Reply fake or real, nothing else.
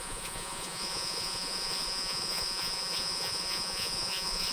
fake